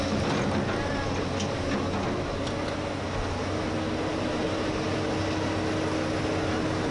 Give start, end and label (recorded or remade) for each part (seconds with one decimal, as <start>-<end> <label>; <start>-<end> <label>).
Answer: 0.0-4.1 recorded; 4.1-4.7 remade; 4.7-6.9 recorded